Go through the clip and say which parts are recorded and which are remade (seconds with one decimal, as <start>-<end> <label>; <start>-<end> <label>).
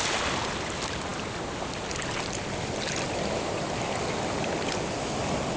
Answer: 0.0-5.6 recorded